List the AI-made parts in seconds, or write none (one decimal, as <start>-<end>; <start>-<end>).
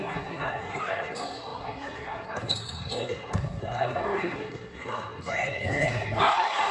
0.0-6.7